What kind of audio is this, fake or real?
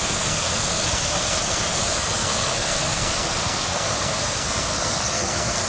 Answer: fake